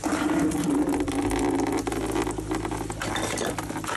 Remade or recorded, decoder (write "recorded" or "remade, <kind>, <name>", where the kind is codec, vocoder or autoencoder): recorded